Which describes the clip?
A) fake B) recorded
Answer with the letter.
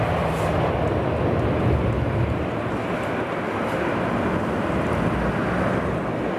B